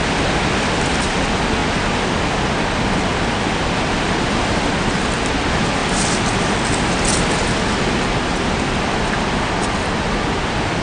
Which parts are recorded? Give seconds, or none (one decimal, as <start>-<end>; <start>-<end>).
0.0-10.8